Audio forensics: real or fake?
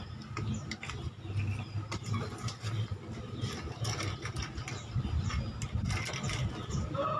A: real